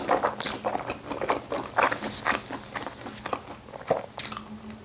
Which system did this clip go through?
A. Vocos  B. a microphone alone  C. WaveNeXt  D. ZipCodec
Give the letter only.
B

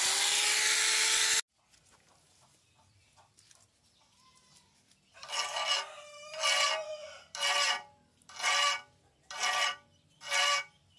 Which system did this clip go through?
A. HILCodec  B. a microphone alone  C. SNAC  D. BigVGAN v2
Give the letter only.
B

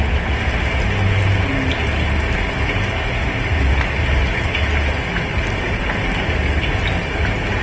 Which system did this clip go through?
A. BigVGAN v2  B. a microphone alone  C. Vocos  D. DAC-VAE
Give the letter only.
B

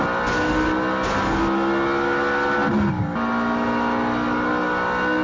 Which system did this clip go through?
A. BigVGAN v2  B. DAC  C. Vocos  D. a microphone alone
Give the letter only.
D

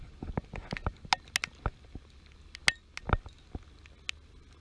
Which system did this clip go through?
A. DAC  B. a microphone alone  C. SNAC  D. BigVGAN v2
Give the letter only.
B